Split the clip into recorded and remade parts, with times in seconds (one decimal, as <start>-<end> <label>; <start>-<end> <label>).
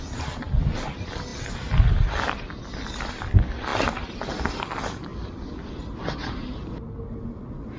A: 0.0-7.8 recorded